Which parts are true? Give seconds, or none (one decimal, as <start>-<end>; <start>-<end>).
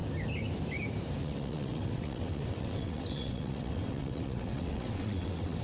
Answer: 0.0-1.2